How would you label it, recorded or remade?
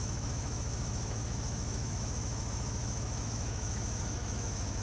remade